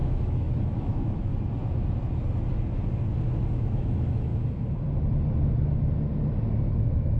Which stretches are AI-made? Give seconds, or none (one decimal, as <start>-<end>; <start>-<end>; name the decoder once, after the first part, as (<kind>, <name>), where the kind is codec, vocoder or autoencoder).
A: 0.0-1.3 (autoencoder, DAC-VAE); 3.5-4.3; 6.8-7.2